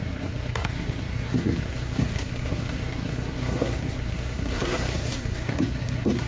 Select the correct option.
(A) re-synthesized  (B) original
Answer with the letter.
A